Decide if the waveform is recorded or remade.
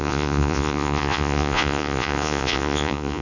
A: remade